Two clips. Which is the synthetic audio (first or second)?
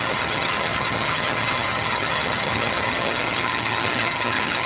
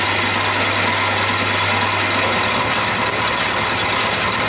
first